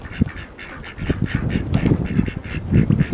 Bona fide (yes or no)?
yes